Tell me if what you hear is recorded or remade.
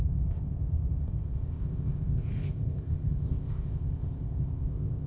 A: remade